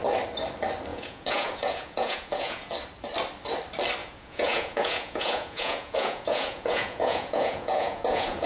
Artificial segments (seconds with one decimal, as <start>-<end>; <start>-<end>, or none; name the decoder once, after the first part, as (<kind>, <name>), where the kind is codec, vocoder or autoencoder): 0.9-2.7 (vocoder, Vocos); 4.0-8.5